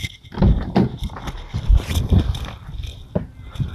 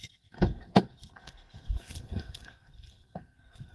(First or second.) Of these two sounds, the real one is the first